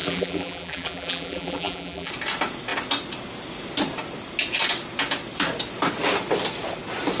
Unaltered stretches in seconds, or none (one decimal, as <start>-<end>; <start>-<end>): 2.1-7.2